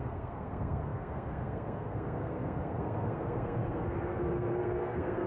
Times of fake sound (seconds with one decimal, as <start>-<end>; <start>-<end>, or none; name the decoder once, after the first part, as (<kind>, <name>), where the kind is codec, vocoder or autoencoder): 0.0-5.3 (codec, SNAC)